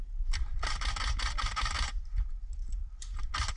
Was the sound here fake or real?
fake